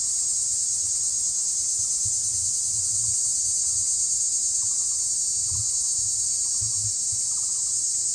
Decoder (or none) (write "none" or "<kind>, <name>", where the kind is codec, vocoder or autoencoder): none